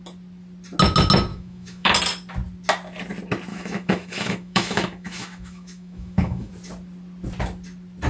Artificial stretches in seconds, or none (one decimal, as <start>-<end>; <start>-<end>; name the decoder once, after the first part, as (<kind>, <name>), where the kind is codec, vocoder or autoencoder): 1.3-1.9 (autoencoder, DAC-VAE); 3.5-6.5